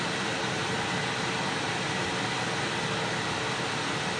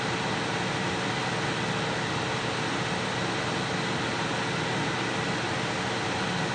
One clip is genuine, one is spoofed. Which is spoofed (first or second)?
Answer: first